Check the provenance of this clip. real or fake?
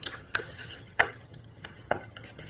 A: fake